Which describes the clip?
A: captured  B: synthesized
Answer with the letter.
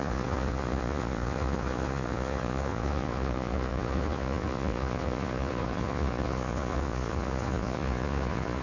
B